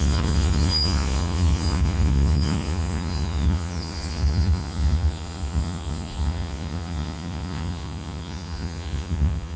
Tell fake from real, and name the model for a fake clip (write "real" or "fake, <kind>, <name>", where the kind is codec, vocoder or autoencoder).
fake, vocoder, Vocos